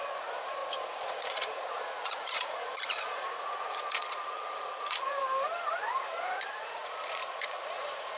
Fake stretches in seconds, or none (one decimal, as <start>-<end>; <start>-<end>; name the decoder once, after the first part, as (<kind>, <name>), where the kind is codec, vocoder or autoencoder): 0.0-5.2 (vocoder, Vocos); 6.2-8.2